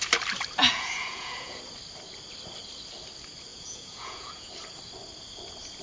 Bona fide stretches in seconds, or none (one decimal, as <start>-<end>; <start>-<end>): 0.0-0.6; 1.6-3.5; 4.5-5.8